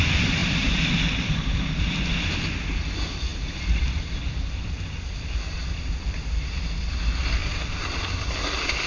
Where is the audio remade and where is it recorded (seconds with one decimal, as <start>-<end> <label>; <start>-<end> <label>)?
0.0-0.4 recorded; 0.4-2.3 remade; 2.3-3.3 recorded; 3.3-6.6 remade; 6.6-7.4 recorded; 7.4-8.1 remade; 8.1-8.9 recorded